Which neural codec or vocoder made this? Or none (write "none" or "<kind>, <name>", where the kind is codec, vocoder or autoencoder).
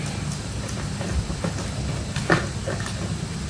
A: none